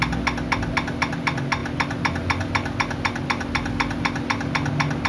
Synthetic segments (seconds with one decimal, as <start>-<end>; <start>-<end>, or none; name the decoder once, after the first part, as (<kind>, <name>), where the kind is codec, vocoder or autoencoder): none